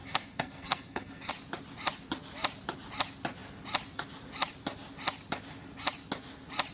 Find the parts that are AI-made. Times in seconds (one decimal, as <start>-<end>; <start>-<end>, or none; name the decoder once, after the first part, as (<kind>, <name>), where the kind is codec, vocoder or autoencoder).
0.0-1.3 (codec, SNAC)